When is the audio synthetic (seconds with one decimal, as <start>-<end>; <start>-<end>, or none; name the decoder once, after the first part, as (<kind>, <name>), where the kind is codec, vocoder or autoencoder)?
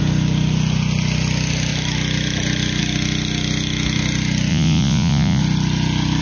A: 4.5-5.4 (vocoder, Vocos)